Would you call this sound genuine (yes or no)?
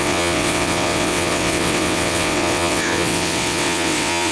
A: no